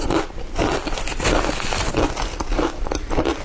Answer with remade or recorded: recorded